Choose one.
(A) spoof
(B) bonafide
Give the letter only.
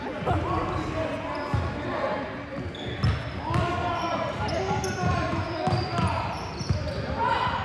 B